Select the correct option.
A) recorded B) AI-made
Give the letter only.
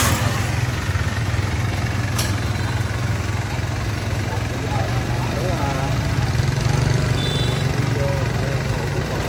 A